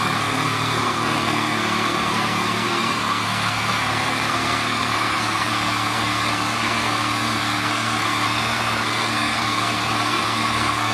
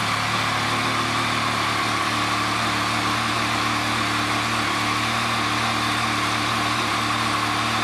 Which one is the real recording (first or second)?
second